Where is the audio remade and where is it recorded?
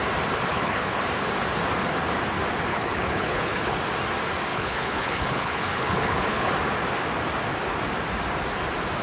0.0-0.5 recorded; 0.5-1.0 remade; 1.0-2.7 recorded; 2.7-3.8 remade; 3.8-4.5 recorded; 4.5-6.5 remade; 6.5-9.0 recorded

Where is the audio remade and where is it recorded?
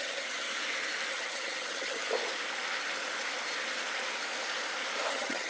0.0-0.5 remade; 0.5-1.1 recorded; 1.1-2.0 remade; 2.0-5.1 recorded; 5.1-5.5 remade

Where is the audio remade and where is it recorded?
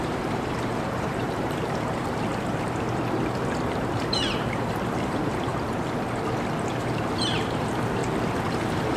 0.0-2.3 remade; 2.3-3.7 recorded; 3.7-5.5 remade; 5.5-6.7 recorded; 6.7-8.0 remade; 8.0-8.5 recorded; 8.5-9.0 remade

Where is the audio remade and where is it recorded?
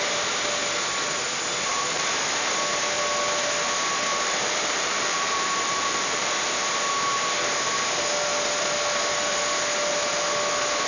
0.0-1.7 recorded; 1.7-2.5 remade; 2.5-4.1 recorded; 4.1-6.3 remade; 6.3-10.9 recorded